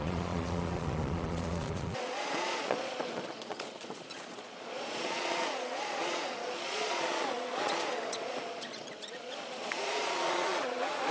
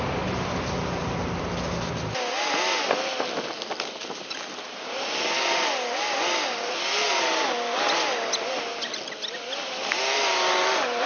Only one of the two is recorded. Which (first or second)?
second